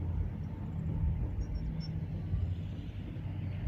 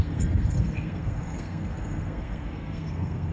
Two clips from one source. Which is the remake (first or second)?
second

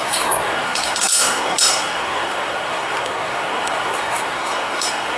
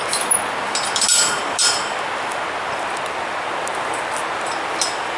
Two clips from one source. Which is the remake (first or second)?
first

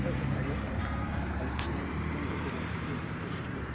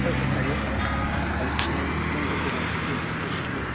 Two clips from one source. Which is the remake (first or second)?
first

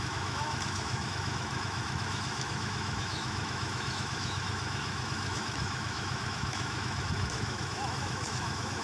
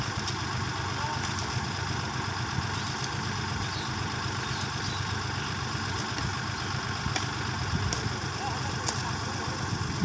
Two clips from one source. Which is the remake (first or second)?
first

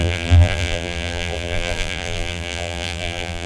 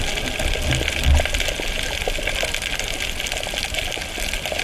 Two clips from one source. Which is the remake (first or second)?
first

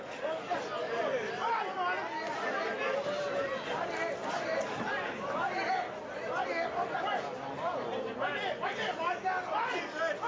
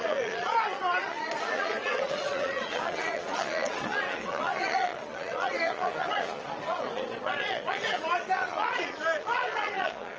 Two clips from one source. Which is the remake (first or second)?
second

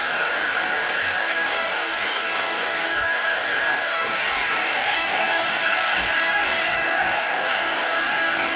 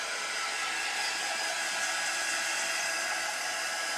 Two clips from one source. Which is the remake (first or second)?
first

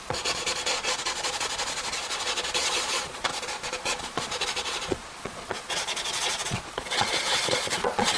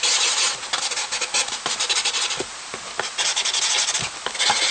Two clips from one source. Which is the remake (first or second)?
first